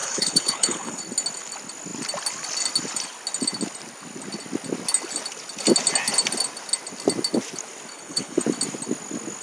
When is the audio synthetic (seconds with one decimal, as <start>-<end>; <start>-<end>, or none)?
0.0-1.0; 7.9-8.4